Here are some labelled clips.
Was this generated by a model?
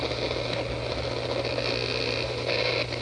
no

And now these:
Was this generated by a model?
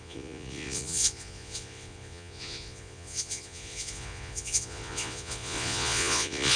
yes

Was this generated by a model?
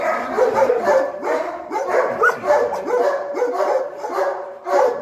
yes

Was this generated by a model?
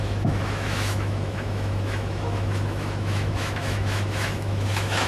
yes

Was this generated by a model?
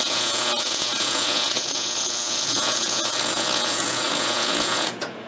yes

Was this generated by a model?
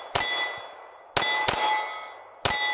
no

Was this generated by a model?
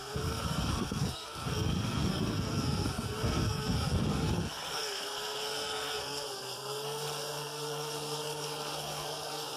yes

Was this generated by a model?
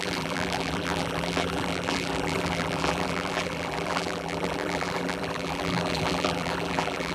yes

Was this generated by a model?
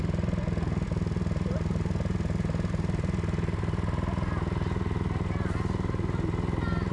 no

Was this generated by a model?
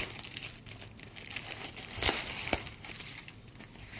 yes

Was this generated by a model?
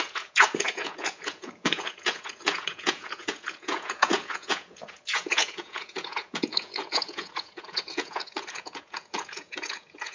yes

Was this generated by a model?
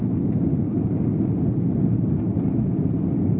no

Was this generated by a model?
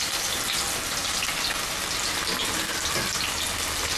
no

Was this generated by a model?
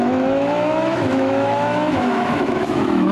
yes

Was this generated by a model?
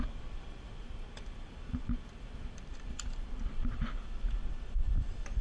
yes